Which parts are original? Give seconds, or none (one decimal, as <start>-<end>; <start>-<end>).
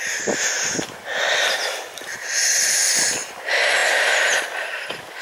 0.0-5.2